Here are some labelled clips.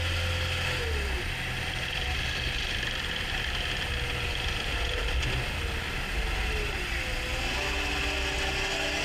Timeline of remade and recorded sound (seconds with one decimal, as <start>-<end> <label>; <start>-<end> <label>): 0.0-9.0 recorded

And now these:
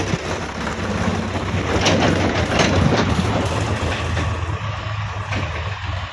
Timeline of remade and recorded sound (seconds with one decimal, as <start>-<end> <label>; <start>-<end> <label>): 0.0-6.1 recorded

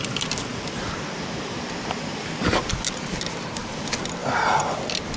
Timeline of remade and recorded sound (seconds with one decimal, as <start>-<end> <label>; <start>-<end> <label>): 0.0-0.5 recorded; 0.5-2.2 remade; 2.2-5.2 recorded

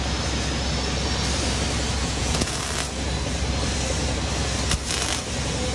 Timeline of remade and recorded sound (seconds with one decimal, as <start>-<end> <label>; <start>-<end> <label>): 0.0-2.0 recorded; 2.0-2.6 remade; 2.6-5.7 recorded